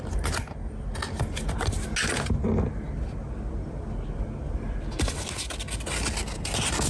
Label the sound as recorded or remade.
recorded